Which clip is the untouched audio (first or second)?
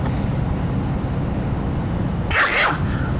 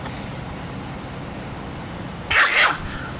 first